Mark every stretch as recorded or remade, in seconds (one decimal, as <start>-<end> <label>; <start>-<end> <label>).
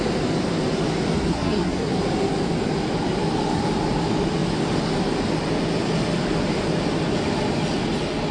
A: 0.0-1.3 recorded; 1.3-1.9 remade; 1.9-8.3 recorded